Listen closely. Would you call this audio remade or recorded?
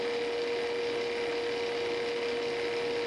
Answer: recorded